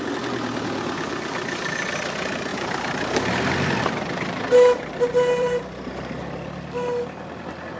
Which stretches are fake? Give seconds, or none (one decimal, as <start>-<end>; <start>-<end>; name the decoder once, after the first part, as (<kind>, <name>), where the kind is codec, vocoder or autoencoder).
2.5-6.2 (vocoder, BigVGAN v2)